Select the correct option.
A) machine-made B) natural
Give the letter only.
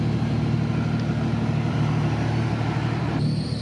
B